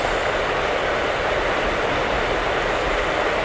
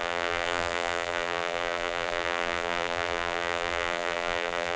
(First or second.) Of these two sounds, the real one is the first